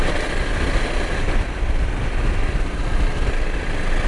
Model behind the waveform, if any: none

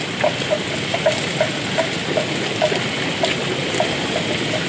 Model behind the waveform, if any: none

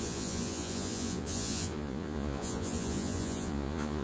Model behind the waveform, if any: vocoder, Vocos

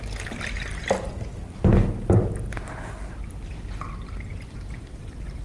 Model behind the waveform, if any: none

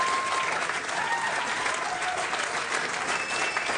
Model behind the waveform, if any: none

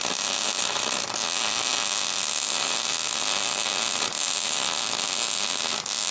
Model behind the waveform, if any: none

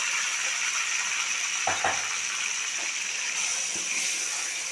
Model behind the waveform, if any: none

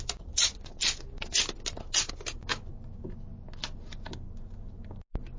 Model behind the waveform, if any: none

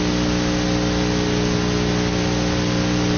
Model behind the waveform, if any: none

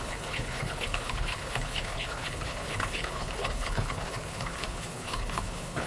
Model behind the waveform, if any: codec, HILCodec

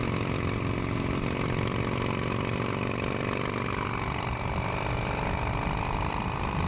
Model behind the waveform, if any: vocoder, BigVGAN v2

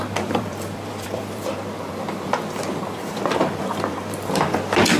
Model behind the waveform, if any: vocoder, BigVGAN v2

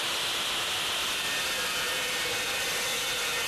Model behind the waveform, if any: vocoder, BigVGAN v2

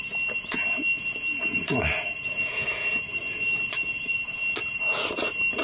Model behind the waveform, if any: none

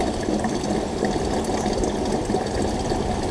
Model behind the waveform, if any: none